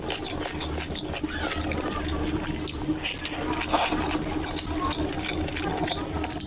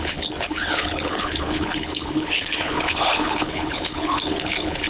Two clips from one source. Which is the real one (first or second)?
first